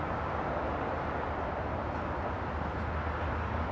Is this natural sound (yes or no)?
yes